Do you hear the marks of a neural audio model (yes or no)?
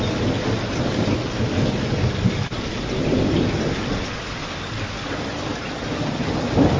no